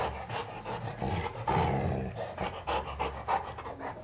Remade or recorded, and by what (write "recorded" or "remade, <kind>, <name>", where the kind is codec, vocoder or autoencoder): recorded